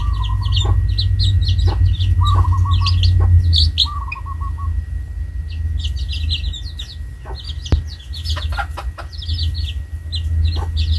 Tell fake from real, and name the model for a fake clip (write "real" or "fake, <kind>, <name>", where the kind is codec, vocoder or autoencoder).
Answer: real